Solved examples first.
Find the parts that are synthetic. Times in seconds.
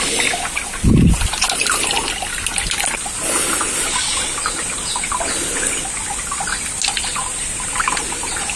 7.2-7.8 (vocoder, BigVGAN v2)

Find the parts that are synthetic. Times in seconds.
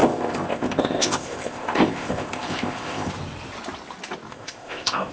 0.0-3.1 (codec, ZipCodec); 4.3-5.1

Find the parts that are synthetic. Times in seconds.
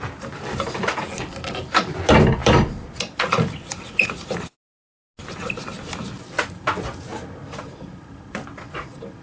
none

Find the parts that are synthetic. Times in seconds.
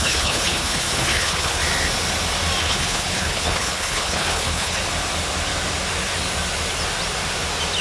0.0-1.6 (codec, HILCodec); 2.6-4.8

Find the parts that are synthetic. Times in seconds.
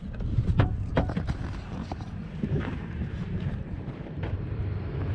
1.5-4.6 (vocoder, BigVGAN v2)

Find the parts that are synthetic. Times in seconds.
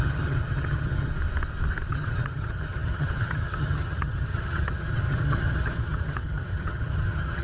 0.0-1.1 (vocoder, HiFi-GAN); 1.9-7.4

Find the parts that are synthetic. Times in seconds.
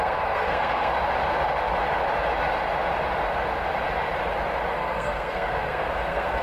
0.0-0.9 (codec, SNAC); 4.7-6.4